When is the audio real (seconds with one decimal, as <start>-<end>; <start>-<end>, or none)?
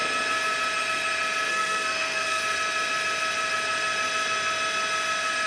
0.0-1.5; 2.4-5.5